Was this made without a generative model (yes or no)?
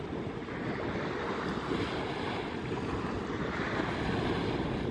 yes